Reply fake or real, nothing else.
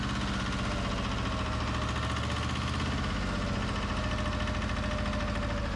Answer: real